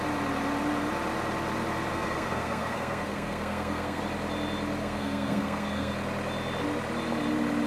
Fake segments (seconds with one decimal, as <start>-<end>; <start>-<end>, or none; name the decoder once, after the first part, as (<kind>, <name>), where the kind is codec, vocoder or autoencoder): 1.9-4.0 (codec, SNAC); 4.8-5.9